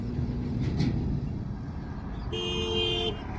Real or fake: real